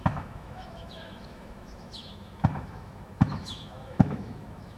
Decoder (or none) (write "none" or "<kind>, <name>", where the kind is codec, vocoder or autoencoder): autoencoder, DAC-VAE